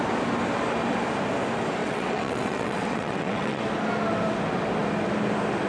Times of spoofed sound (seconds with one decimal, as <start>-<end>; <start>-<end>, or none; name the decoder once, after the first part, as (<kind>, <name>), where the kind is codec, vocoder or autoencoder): 1.8-3.6 (vocoder, WaveNeXt)